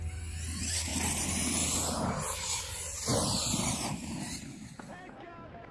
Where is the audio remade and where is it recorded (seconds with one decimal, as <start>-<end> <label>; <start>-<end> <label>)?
0.0-5.7 recorded